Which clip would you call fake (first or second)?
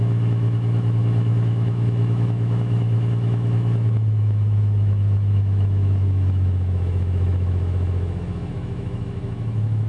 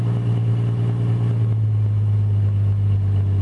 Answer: first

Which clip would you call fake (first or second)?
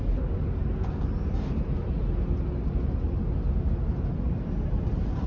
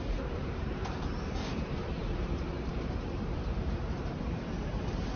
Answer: second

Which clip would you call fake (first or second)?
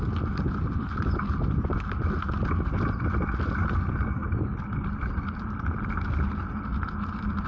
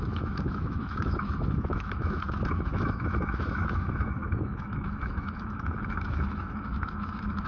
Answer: second